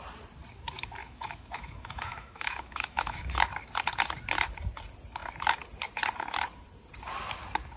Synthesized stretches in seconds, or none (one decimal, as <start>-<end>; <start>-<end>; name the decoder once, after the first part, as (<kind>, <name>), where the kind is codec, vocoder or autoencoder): 1.0-3.3 (autoencoder, DAC-VAE)